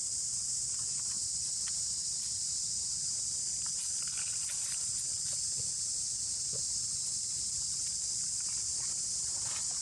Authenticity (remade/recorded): recorded